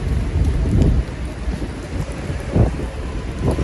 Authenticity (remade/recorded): recorded